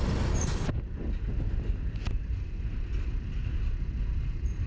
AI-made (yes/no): no